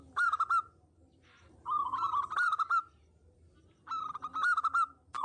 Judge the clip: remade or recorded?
remade